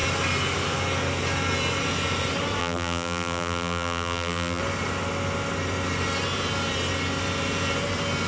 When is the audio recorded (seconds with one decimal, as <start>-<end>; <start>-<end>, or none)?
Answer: 0.0-2.6; 4.6-8.3